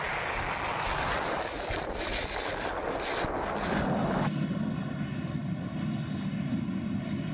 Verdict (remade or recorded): recorded